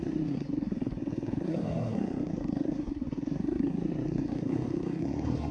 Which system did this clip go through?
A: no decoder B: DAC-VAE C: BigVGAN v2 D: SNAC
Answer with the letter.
D